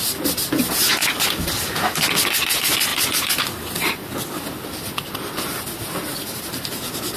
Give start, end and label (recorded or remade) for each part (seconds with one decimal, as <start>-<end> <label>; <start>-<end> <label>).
0.0-7.2 recorded